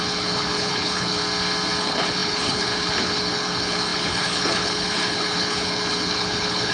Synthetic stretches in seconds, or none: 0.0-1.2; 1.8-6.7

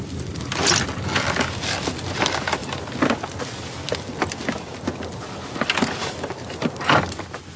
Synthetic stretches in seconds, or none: none